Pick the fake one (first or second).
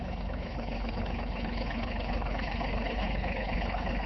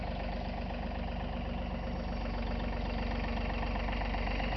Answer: first